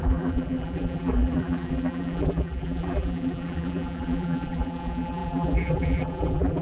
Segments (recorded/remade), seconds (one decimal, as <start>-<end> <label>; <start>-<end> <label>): 0.0-6.6 remade